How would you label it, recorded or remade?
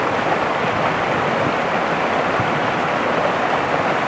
recorded